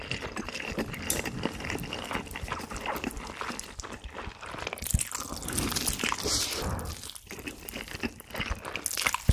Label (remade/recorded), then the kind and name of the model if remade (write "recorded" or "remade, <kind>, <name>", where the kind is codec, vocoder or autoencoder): recorded